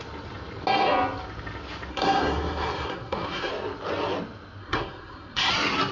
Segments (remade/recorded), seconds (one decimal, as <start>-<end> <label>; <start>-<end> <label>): 0.0-1.9 recorded; 1.9-3.5 remade; 3.5-4.6 recorded; 4.6-5.5 remade; 5.5-5.9 recorded